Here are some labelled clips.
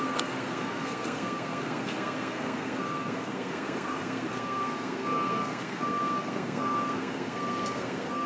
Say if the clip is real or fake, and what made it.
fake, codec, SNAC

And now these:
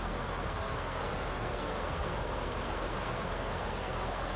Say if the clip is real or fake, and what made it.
fake, codec, SNAC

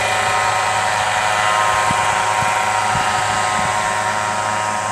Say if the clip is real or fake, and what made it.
real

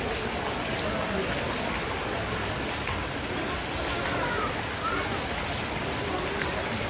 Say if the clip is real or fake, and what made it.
real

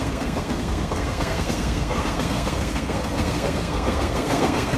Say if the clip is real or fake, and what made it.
fake, codec, SNAC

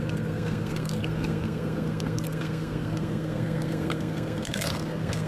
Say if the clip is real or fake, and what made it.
fake, codec, SNAC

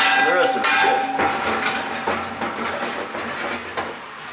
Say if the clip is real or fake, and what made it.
real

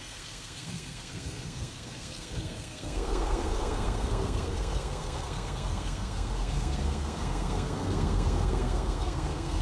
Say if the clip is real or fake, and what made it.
fake, codec, SNAC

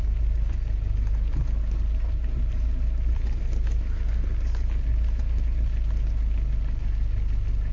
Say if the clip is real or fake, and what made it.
real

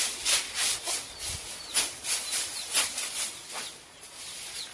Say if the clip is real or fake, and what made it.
real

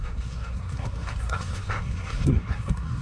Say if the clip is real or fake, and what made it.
fake, codec, SNAC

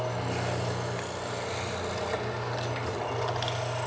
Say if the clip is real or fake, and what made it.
real